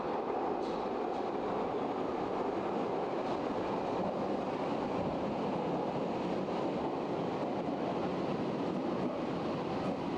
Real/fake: real